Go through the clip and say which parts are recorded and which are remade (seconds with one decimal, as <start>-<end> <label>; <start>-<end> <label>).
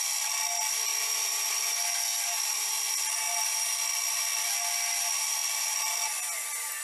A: 0.0-6.8 recorded